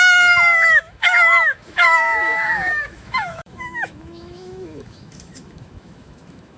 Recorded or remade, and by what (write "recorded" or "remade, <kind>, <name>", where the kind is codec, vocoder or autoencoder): remade, autoencoder, DAC-VAE